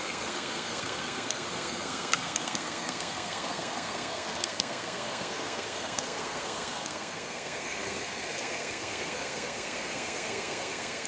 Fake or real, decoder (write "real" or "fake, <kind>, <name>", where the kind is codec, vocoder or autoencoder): fake, codec, SNAC